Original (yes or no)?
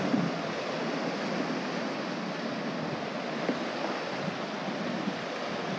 yes